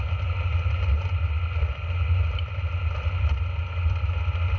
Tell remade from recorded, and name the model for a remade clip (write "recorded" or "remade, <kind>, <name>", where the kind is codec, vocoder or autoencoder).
recorded